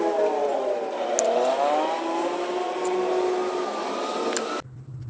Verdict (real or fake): real